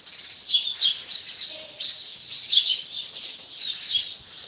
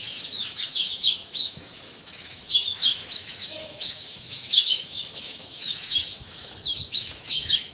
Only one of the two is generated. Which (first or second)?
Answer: second